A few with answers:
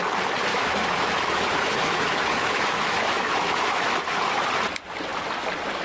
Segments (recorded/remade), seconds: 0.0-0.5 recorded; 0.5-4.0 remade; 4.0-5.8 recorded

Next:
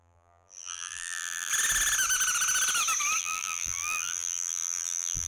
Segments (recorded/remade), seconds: 0.0-1.5 remade; 1.5-3.2 recorded; 3.2-5.3 remade

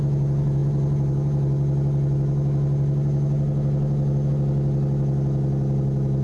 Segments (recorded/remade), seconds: 0.0-6.2 recorded